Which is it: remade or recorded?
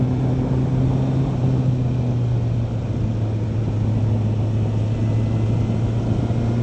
recorded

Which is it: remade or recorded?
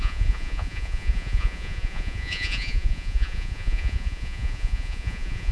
remade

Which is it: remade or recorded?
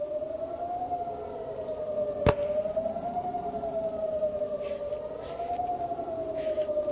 recorded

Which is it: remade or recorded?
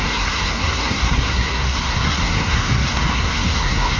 remade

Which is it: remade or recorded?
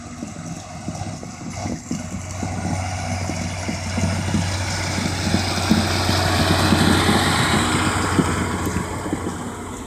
recorded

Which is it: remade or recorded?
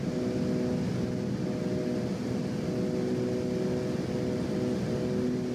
recorded